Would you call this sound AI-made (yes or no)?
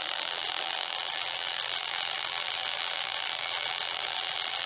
yes